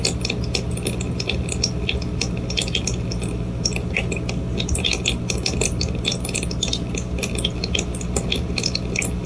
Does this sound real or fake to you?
real